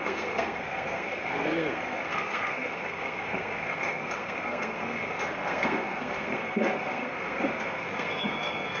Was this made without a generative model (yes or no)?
no